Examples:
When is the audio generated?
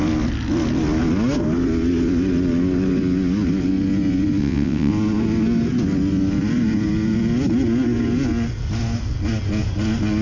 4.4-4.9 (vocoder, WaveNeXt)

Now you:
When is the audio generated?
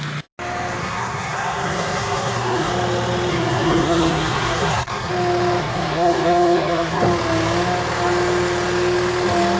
0.8-2.7 (codec, SNAC); 3.3-5.1; 5.6-7.0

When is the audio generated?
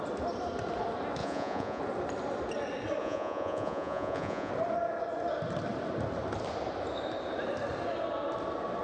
1.2-1.8 (vocoder, Vocos); 3.0-4.5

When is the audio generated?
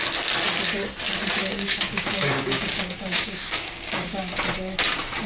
1.4-4.3 (codec, DAC)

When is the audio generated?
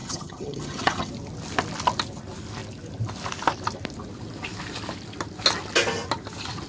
0.0-1.1 (vocoder, HiFi-GAN)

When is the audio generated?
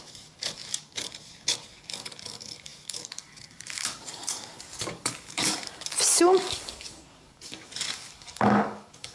0.0-9.1 (codec, DAC)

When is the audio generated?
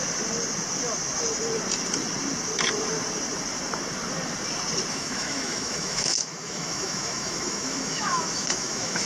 4.9-9.1 (autoencoder, DAC-VAE)